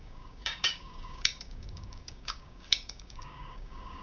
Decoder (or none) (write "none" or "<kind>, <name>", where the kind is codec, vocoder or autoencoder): codec, DAC